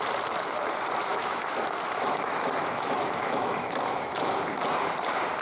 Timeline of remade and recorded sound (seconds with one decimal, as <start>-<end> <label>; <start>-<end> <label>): 0.0-1.1 recorded; 1.1-4.3 remade; 4.3-5.4 recorded